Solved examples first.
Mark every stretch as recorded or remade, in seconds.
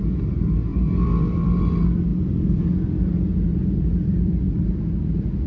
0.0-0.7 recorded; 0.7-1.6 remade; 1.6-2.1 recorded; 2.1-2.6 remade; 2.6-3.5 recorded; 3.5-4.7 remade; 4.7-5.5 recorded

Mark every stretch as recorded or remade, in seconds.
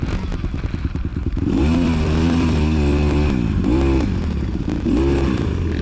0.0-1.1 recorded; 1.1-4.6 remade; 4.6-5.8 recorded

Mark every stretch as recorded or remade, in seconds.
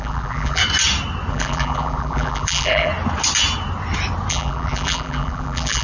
0.0-0.6 remade; 0.6-1.3 recorded; 1.3-2.9 remade; 2.9-4.3 recorded; 4.3-5.8 remade